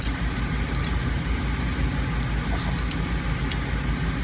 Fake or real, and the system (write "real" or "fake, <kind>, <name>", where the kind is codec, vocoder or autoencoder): real